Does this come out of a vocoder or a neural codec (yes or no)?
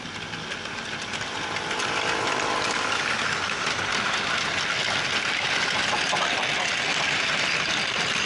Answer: no